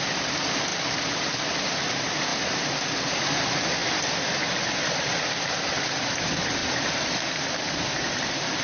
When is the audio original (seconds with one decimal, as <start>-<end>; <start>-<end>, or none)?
0.0-0.7; 1.3-6.6; 7.1-8.6